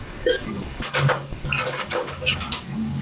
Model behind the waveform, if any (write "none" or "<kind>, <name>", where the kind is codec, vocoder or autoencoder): codec, DAC